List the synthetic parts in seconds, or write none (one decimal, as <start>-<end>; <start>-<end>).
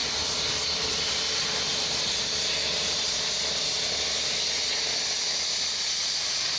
0.9-1.7; 5.7-6.6